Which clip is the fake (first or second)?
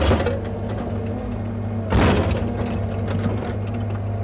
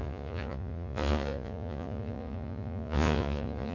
second